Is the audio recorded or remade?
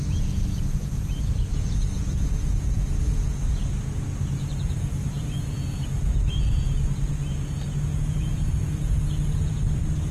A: remade